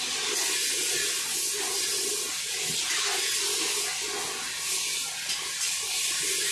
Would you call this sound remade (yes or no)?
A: no